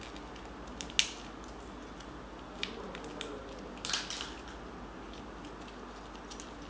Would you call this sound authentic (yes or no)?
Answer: yes